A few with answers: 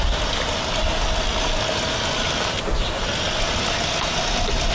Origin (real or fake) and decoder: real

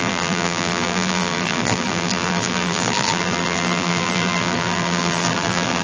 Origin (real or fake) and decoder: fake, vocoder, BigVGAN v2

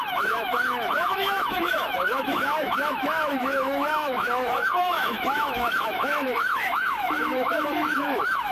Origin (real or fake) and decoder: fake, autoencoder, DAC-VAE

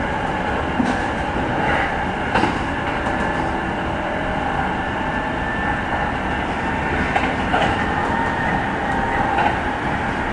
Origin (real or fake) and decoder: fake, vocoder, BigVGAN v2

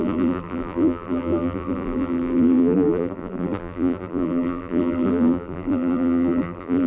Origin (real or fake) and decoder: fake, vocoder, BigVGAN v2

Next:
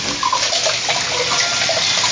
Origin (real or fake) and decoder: real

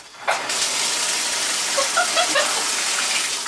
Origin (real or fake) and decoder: real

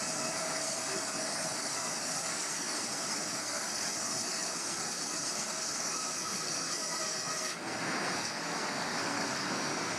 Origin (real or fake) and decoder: fake, codec, SNAC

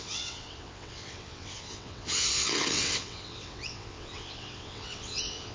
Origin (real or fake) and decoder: fake, vocoder, WaveNeXt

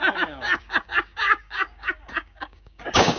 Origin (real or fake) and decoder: fake, codec, DAC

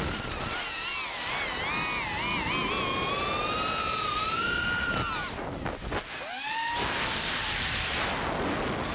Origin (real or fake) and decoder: real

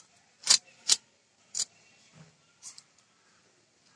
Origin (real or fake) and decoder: fake, vocoder, BigVGAN v2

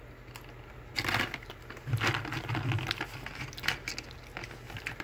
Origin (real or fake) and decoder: real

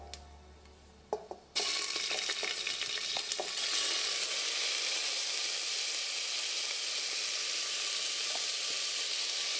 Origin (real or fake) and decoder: real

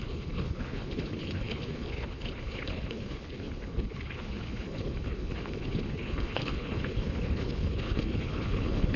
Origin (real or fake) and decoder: fake, codec, HILCodec